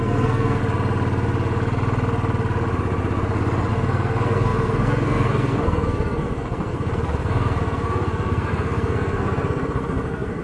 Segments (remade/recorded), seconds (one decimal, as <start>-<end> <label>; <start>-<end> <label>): 0.0-0.6 remade; 0.6-3.7 recorded; 3.7-10.4 remade